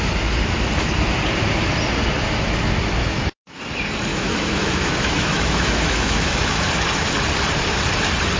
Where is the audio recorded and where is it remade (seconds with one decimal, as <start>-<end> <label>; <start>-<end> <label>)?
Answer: 0.0-3.0 recorded; 3.0-3.6 remade; 3.6-4.1 recorded; 4.1-6.6 remade; 6.6-8.4 recorded